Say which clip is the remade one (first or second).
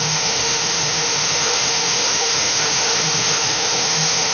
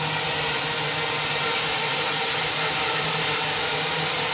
first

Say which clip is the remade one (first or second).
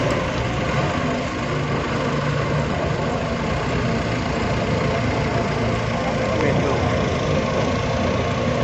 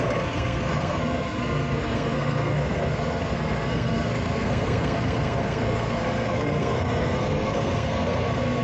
second